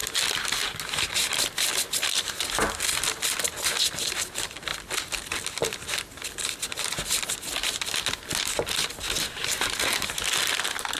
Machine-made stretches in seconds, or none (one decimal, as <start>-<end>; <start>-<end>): none